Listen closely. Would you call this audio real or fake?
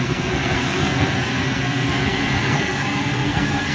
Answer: fake